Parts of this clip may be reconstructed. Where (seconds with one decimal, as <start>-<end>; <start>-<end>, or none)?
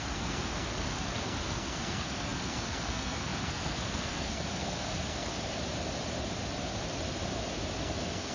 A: 0.0-5.3; 7.8-8.3